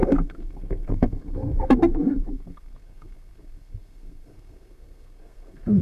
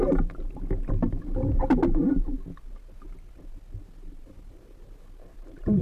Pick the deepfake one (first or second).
first